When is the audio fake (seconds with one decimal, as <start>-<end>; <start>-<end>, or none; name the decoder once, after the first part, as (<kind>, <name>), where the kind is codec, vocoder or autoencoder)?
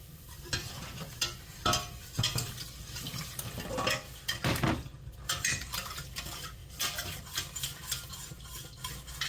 0.6-3.7 (vocoder, BigVGAN v2); 6.6-7.2